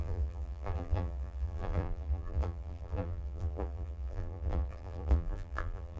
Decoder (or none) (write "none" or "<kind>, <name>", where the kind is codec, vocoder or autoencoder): vocoder, BigVGAN v2